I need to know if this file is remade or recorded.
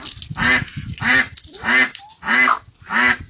recorded